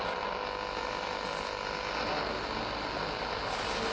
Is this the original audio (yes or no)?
yes